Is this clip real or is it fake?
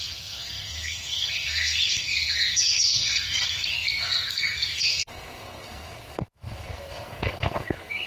fake